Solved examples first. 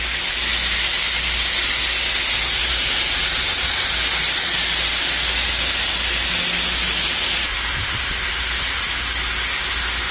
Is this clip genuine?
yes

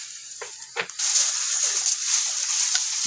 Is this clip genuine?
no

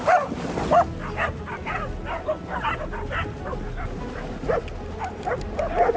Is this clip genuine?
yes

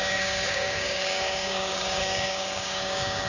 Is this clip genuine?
no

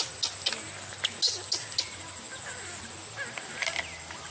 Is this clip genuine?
yes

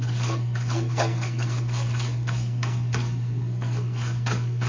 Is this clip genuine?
no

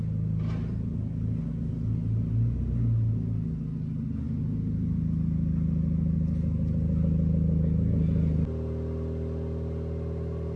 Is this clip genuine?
yes